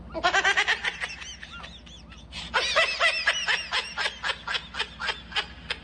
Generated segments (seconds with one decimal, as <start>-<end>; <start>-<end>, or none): none